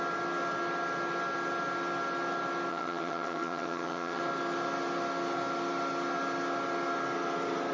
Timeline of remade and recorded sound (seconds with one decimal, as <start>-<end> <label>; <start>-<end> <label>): 0.0-2.7 recorded; 2.7-4.2 remade; 4.2-7.7 recorded